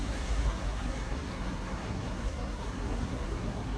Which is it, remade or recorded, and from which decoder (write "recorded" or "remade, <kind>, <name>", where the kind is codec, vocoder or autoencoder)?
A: remade, codec, SNAC